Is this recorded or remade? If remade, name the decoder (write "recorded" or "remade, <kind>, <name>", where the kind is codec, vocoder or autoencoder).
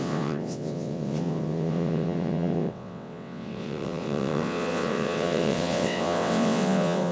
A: remade, vocoder, WaveNeXt